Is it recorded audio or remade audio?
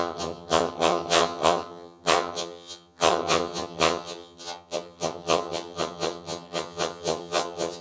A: remade